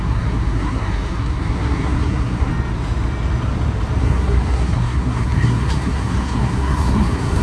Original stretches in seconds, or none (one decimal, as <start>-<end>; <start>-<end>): 2.5-4.0